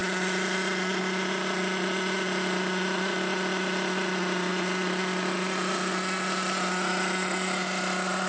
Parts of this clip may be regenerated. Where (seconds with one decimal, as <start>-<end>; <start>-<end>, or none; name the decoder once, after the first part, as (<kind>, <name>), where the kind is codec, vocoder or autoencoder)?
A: 0.0-1.0 (vocoder, BigVGAN v2)